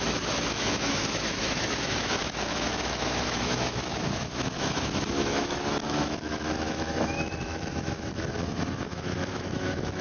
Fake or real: fake